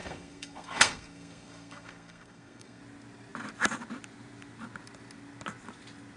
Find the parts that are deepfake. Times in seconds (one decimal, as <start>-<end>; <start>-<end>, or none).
0.0-2.8

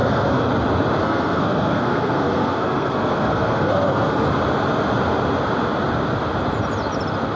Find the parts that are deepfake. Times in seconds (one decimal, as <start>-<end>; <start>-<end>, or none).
0.0-0.5; 1.0-4.3

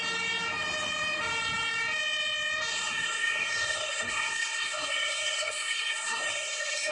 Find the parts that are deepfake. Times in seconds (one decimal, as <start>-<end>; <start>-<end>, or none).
2.7-6.9